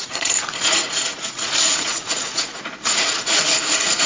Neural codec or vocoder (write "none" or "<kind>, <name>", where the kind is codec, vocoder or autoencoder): vocoder, Vocos